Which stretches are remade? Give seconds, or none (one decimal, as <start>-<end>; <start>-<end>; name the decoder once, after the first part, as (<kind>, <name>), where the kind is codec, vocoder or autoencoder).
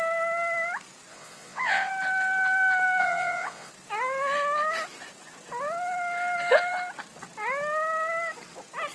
1.1-1.9 (vocoder, WaveNeXt); 3.0-3.7